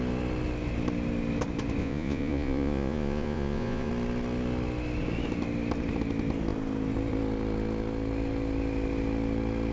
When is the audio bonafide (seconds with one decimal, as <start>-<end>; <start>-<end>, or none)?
0.0-1.8; 3.9-9.7